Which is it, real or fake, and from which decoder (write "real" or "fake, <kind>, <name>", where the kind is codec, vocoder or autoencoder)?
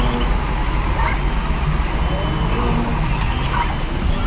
real